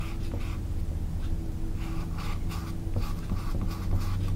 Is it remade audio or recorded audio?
recorded